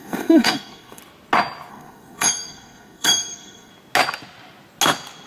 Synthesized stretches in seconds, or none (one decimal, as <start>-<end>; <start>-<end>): 0.0-1.0; 1.7-3.7